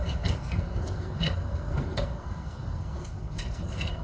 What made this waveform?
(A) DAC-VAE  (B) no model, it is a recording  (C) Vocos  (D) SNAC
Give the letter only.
D